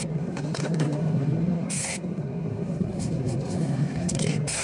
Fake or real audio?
fake